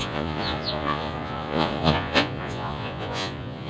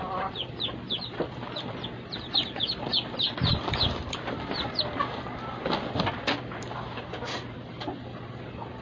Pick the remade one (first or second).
first